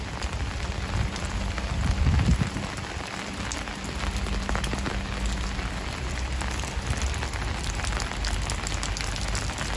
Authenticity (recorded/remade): recorded